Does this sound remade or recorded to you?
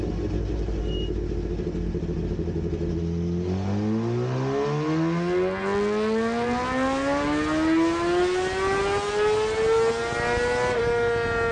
recorded